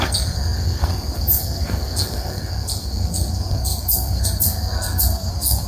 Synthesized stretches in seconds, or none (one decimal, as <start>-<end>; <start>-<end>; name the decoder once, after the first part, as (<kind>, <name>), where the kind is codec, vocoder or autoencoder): 0.0-5.7 (codec, SNAC)